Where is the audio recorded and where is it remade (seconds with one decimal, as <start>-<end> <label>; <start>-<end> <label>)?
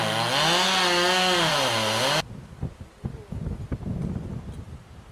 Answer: 0.0-5.1 recorded